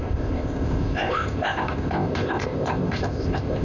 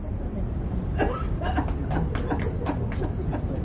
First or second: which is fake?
first